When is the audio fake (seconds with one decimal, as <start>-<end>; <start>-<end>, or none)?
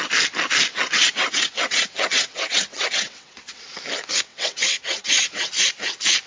0.7-3.8; 4.3-5.5